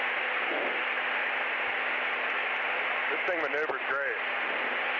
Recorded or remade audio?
recorded